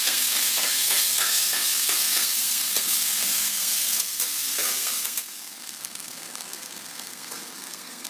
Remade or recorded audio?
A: remade